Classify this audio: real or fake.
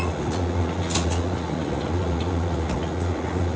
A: fake